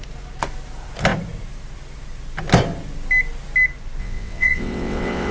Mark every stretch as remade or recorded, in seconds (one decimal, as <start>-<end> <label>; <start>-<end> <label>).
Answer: 0.0-4.0 recorded; 4.0-5.3 remade